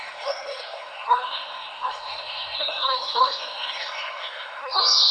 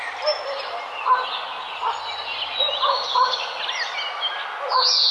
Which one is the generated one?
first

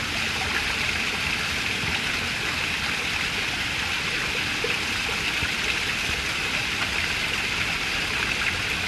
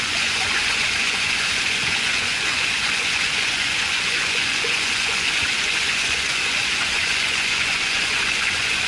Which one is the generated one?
second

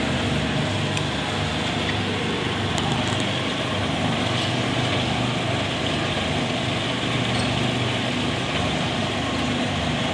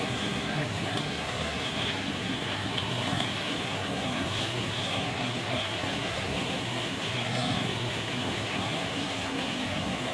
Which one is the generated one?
second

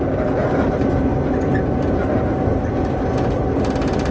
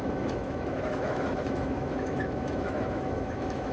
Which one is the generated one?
second